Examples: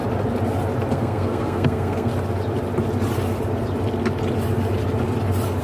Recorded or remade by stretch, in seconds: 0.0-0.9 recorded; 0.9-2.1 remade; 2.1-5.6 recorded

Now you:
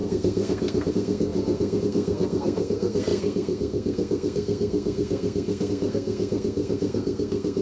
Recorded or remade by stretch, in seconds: 0.0-7.6 remade